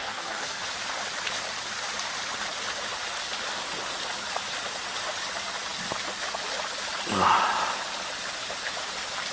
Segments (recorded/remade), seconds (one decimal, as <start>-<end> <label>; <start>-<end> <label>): 0.0-0.6 remade; 0.6-9.3 recorded